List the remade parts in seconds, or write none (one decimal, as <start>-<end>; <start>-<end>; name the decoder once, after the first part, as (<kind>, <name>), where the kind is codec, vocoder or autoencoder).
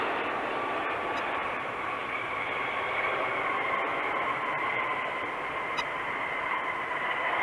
1.4-2.7 (vocoder, BigVGAN v2); 3.9-5.2